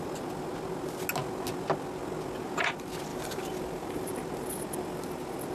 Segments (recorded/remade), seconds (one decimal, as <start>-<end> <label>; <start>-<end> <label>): 0.0-3.1 recorded; 3.1-4.1 remade; 4.1-5.5 recorded